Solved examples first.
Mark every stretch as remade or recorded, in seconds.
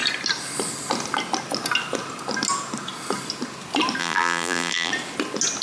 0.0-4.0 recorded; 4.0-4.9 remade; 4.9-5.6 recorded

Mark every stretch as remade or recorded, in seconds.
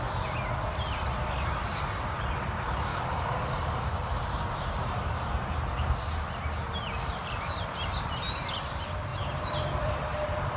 0.0-2.9 recorded; 2.9-4.4 remade; 4.4-7.2 recorded; 7.2-8.6 remade; 8.6-9.1 recorded; 9.1-9.9 remade; 9.9-10.6 recorded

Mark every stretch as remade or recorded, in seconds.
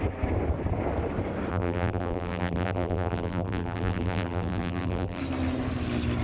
0.0-1.5 recorded; 1.5-5.2 remade; 5.2-6.2 recorded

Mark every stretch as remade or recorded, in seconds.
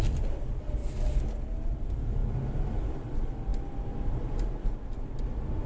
0.0-0.8 remade; 0.8-1.3 recorded; 1.3-2.2 remade; 2.2-2.9 recorded; 2.9-5.7 remade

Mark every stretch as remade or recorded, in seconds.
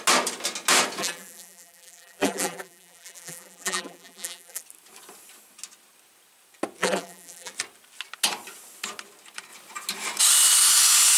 0.0-1.0 recorded; 1.0-4.6 remade; 4.6-6.8 recorded; 6.8-7.5 remade; 7.5-11.2 recorded